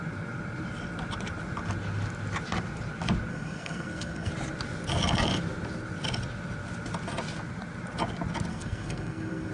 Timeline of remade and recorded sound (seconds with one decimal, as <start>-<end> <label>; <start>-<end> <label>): 0.0-3.3 recorded; 3.3-4.3 remade; 4.3-8.5 recorded; 8.5-9.5 remade